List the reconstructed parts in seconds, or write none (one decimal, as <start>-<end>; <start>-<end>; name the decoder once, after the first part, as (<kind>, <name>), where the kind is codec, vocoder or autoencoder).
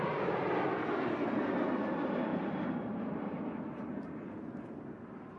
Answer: 2.3-3.5 (vocoder, BigVGAN v2)